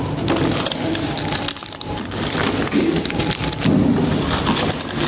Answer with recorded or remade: remade